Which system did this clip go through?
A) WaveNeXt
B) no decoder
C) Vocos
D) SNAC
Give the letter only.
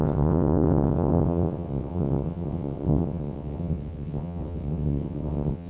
A